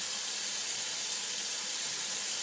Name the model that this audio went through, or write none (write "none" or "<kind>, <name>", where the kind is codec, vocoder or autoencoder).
none